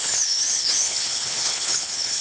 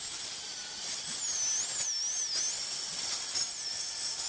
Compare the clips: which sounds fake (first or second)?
first